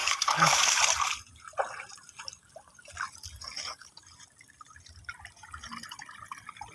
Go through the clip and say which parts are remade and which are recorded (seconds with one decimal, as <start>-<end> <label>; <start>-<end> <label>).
0.0-0.8 remade; 0.8-6.7 recorded